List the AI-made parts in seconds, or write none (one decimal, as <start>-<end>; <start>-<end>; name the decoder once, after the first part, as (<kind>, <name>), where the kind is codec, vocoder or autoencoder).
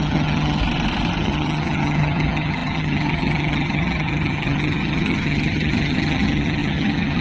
0.0-0.6 (vocoder, HiFi-GAN); 1.2-7.2